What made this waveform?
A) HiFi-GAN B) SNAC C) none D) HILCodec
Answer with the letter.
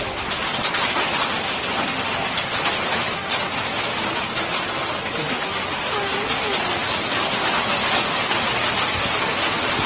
C